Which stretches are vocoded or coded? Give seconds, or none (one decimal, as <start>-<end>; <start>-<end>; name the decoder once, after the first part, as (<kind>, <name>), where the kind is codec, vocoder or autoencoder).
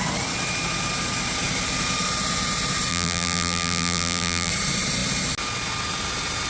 2.9-4.5 (vocoder, BigVGAN v2)